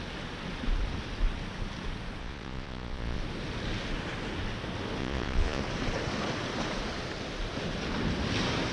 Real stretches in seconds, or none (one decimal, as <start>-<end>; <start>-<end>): 0.0-2.2; 3.2-5.0; 5.6-8.7

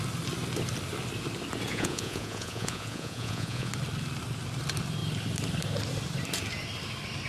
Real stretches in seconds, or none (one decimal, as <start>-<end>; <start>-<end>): 0.0-1.7; 3.7-7.3

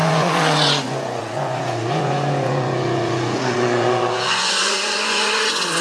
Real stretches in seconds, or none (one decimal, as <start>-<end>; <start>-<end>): none

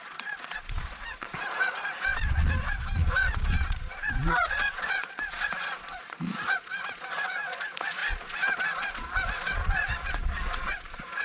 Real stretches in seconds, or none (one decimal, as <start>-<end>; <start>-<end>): none